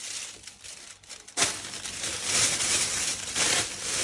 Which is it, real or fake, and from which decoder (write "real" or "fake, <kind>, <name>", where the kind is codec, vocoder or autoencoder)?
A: real